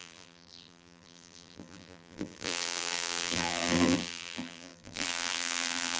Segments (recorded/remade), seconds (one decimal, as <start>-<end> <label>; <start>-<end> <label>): 0.0-6.0 remade